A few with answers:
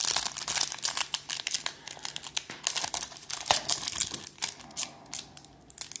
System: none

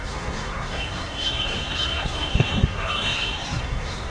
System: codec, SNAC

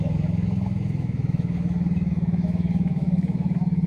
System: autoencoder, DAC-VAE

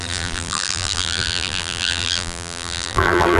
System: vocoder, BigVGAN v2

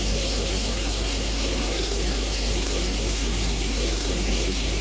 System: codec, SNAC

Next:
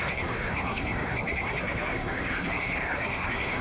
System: codec, SNAC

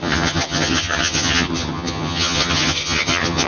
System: vocoder, HiFi-GAN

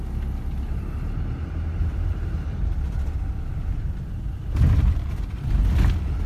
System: none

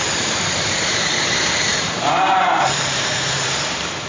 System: vocoder, BigVGAN v2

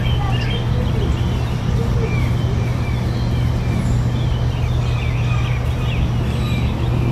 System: none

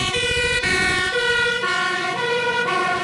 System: vocoder, Vocos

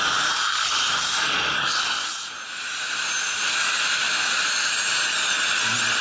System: none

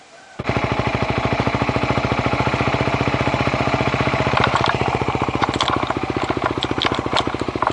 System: none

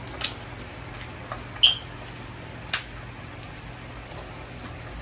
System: none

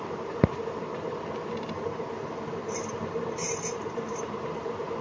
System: vocoder, BigVGAN v2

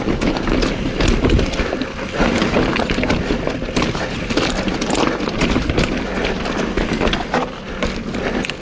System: none